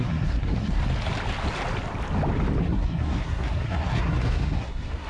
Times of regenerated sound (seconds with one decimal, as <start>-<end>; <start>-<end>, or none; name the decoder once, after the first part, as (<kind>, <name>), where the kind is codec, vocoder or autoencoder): 0.0-0.8 (codec, SNAC); 2.6-5.1